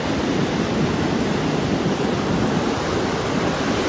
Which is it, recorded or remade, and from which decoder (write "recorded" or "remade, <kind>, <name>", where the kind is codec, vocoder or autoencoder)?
recorded